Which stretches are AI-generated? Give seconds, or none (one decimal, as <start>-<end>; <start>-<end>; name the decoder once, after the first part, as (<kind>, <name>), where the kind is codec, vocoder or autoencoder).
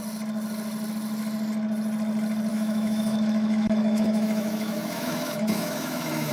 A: 2.5-6.3 (autoencoder, DAC-VAE)